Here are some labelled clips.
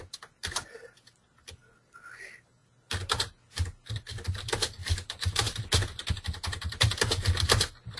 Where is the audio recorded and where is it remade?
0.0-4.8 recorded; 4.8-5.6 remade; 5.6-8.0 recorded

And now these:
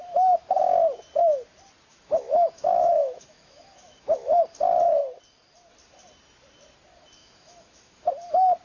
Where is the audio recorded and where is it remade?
0.0-1.9 recorded; 1.9-4.4 remade; 4.4-7.2 recorded; 7.2-8.1 remade; 8.1-8.6 recorded

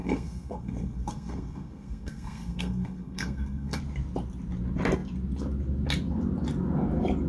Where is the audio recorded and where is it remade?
0.0-3.8 remade; 3.8-7.3 recorded

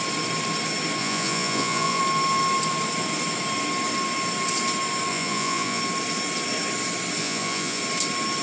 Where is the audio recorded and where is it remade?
0.0-1.0 recorded; 1.0-2.0 remade; 2.0-5.1 recorded; 5.1-5.8 remade; 5.8-7.2 recorded; 7.2-7.8 remade; 7.8-8.4 recorded

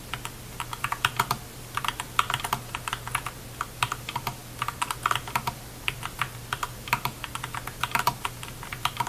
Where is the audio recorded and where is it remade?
0.0-9.1 recorded

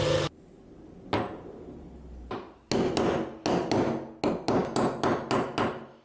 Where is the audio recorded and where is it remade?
0.0-6.0 recorded

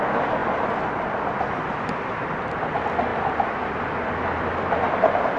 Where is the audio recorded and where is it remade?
0.0-5.4 recorded